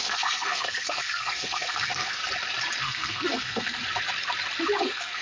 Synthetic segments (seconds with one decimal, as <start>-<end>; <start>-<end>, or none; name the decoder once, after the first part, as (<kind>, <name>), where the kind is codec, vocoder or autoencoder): 0.0-2.2 (codec, SNAC); 2.8-3.8; 4.8-5.2